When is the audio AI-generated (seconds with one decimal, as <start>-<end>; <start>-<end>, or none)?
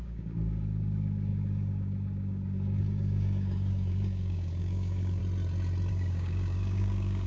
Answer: 0.0-5.2; 5.9-7.3